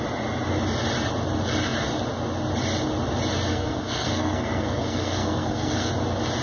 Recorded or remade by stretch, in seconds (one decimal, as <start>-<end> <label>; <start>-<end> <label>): 0.0-3.5 recorded; 3.5-5.9 remade; 5.9-6.4 recorded